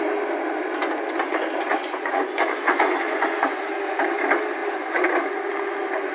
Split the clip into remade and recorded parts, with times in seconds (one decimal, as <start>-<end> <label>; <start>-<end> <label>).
0.0-1.7 recorded; 1.7-3.6 remade; 3.6-6.1 recorded